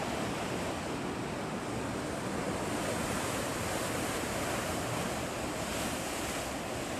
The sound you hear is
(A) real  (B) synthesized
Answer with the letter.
A